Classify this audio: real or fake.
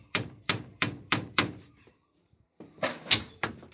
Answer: fake